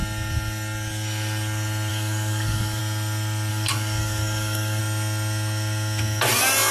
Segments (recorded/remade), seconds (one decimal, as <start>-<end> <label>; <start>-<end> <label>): 0.0-1.9 recorded; 1.9-2.8 remade; 2.8-3.5 recorded; 3.5-4.8 remade; 4.8-6.7 recorded